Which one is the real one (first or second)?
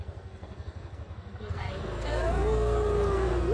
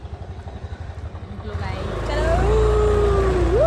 second